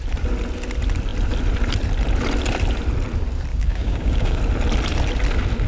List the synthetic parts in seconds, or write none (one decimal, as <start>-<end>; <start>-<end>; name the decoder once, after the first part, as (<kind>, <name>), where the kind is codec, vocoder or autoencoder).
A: 3.5-4.4 (codec, DAC)